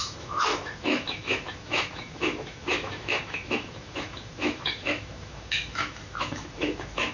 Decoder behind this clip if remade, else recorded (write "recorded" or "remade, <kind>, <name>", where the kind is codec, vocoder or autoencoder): remade, autoencoder, DAC-VAE